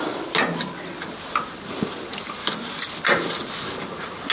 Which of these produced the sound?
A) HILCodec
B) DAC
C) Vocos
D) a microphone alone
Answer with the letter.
D